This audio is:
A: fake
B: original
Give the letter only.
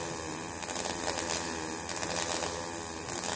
B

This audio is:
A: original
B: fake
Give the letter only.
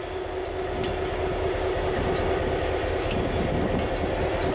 A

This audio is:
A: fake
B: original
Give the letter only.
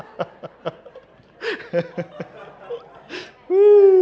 B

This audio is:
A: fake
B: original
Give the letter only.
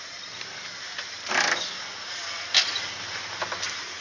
B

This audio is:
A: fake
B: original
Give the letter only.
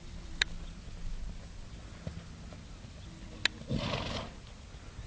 B